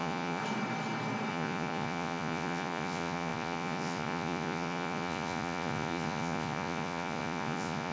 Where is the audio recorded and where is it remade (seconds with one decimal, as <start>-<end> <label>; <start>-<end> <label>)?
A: 0.0-0.4 remade; 0.4-1.3 recorded; 1.3-7.9 remade